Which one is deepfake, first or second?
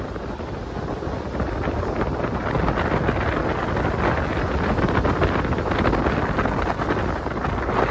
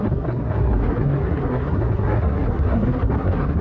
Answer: second